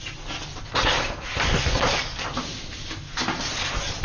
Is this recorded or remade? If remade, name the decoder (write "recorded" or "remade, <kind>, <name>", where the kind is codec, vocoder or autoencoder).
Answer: recorded